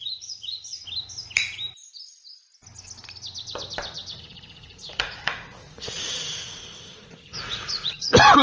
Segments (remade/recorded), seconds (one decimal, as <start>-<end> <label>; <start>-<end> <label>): 0.0-0.8 remade; 0.8-4.2 recorded; 4.2-8.4 remade